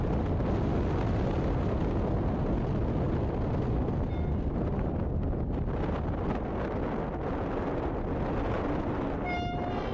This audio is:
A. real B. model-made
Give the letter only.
A